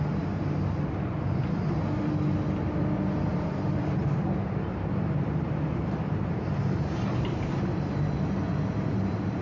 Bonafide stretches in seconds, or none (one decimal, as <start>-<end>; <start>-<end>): 0.0-3.3; 8.5-9.4